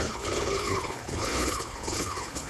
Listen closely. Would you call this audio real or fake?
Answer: fake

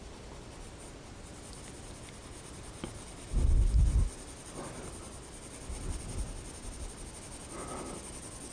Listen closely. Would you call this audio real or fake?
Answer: real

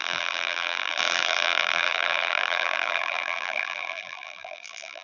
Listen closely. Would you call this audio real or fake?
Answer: fake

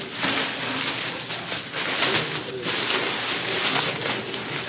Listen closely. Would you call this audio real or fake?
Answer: real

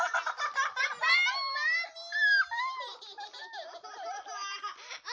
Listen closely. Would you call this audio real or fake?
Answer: real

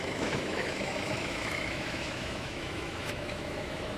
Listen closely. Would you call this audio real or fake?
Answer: fake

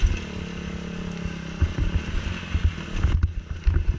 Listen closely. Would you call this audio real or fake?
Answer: real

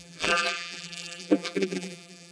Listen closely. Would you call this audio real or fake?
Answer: fake